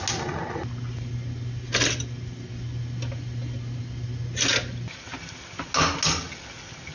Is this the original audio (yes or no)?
yes